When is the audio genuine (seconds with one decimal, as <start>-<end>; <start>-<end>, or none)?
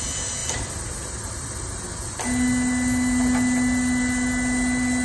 0.0-5.0